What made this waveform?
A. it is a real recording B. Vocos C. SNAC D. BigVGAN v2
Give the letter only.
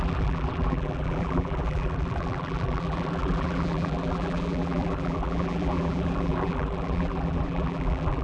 D